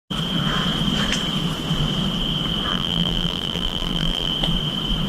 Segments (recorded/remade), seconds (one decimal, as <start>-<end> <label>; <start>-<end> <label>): 0.0-2.7 recorded; 2.7-4.3 remade; 4.3-5.1 recorded